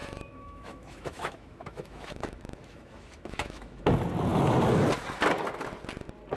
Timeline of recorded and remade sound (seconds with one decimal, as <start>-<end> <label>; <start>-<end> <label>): 0.0-3.8 remade; 3.8-6.4 recorded